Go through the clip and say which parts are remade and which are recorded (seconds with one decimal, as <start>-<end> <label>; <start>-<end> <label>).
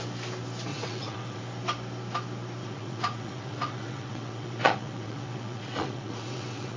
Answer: 0.0-0.7 recorded; 0.7-1.4 remade; 1.4-2.6 recorded; 2.6-6.8 remade